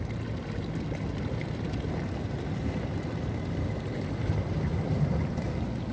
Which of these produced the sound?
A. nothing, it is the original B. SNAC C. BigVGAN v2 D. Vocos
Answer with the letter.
A